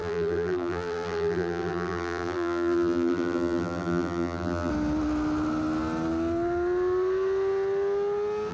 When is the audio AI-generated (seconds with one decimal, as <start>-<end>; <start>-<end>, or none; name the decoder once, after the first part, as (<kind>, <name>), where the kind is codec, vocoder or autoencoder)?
0.0-4.7 (vocoder, BigVGAN v2)